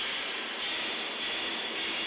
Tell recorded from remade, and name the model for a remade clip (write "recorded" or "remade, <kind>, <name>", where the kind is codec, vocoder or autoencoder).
recorded